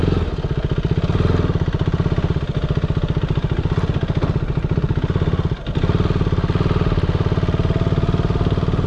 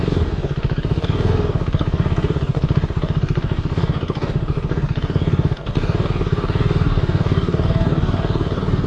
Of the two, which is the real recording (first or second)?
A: first